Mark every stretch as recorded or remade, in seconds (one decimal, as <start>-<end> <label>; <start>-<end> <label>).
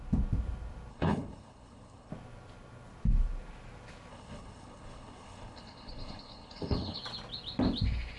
0.0-0.9 recorded; 0.9-2.1 remade; 2.1-4.1 recorded; 4.1-7.0 remade; 7.0-8.2 recorded